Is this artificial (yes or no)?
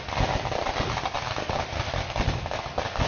no